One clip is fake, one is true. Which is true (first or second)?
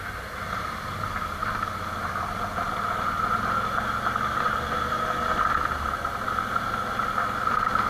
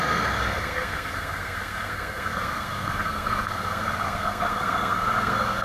first